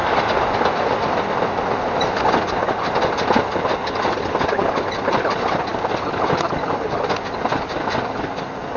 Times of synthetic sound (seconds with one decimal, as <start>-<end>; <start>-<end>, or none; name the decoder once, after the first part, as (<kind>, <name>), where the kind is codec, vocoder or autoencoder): 0.0-1.3 (vocoder, BigVGAN v2); 2.6-3.9; 5.7-6.3